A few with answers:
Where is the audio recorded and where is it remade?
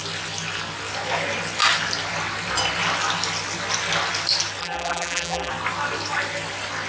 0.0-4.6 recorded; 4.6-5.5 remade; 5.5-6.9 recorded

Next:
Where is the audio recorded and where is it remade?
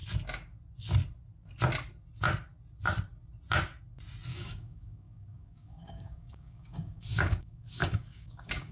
0.0-4.3 recorded; 4.3-8.7 remade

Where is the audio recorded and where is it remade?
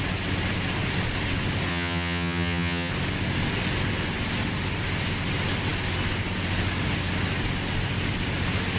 0.0-1.7 recorded; 1.7-2.9 remade; 2.9-8.8 recorded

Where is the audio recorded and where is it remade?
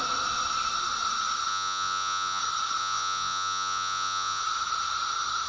0.0-1.5 recorded; 1.5-2.4 remade; 2.4-2.8 recorded; 2.8-4.4 remade; 4.4-5.5 recorded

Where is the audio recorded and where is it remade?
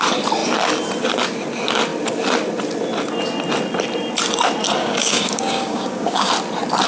0.0-4.8 recorded; 4.8-6.3 remade; 6.3-6.9 recorded